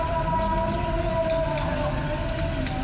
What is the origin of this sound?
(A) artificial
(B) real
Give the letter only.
B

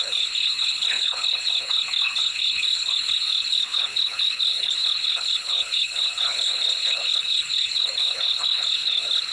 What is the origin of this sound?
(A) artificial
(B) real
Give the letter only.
A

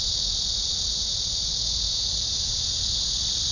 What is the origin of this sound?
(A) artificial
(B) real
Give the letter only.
B